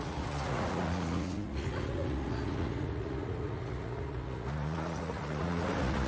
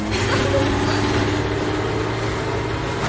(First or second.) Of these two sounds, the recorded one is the second